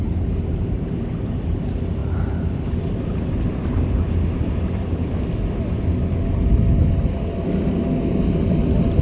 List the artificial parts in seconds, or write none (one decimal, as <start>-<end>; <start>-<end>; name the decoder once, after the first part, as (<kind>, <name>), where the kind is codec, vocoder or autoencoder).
2.0-3.1 (vocoder, BigVGAN v2)